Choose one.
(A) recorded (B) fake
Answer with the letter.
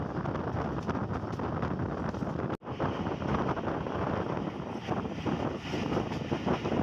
A